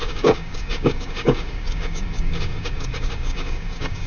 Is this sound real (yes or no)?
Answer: no